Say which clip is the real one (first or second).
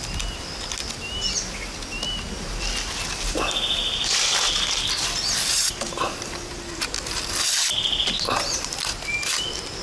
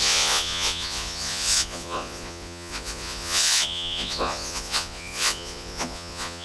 first